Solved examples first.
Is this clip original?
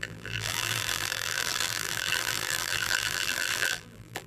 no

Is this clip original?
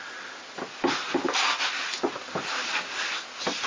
yes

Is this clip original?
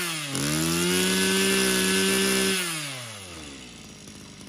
yes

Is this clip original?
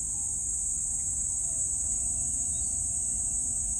yes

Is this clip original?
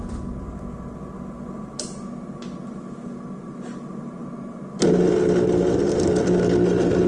yes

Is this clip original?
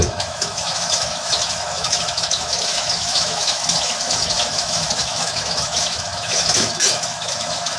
no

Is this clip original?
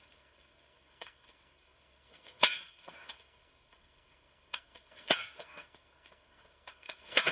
no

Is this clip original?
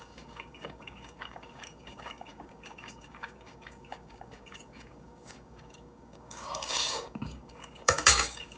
no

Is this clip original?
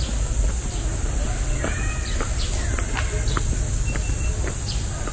yes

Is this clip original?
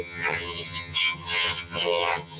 no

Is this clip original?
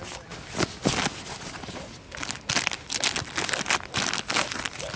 yes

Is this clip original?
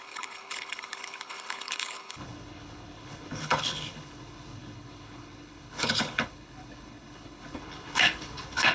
no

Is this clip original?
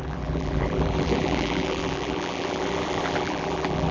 no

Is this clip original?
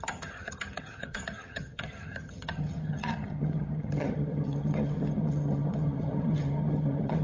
no